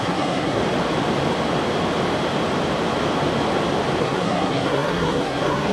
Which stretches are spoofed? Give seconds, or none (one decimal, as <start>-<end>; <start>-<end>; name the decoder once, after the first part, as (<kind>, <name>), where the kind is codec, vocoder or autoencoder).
0.0-0.6 (codec, SNAC); 4.0-5.7